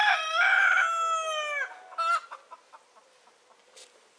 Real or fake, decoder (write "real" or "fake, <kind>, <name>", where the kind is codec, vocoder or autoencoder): real